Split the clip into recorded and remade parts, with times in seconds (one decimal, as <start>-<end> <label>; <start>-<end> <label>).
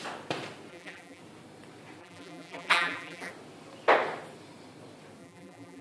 0.0-0.7 recorded; 0.7-1.2 remade; 1.2-2.0 recorded; 2.0-3.3 remade; 3.3-5.2 recorded; 5.2-5.8 remade